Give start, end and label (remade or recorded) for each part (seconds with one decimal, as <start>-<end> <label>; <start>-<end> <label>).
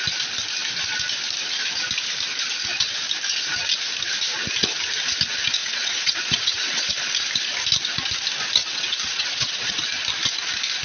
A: 0.0-5.6 recorded; 5.6-6.9 remade; 6.9-8.6 recorded; 8.6-9.8 remade; 9.8-10.8 recorded